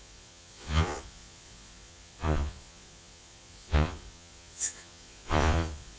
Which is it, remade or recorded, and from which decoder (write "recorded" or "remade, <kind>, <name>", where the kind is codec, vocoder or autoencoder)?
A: remade, vocoder, Vocos